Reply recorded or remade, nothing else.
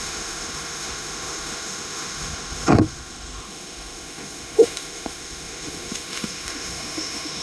remade